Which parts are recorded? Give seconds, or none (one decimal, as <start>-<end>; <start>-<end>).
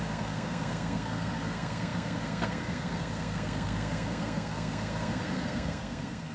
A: none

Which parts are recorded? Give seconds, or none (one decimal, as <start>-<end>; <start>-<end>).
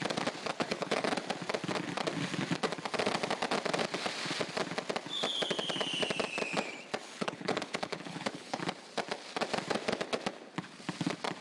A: 0.0-0.5; 1.1-7.0; 8.6-11.4